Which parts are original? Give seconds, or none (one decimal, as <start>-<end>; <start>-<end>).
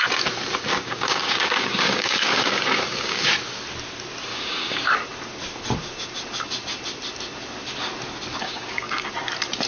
0.0-0.7; 3.3-4.3; 4.9-8.4; 9.1-9.7